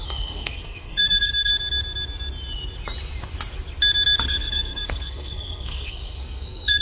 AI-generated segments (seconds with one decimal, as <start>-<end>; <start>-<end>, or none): 0.0-1.5; 4.2-6.8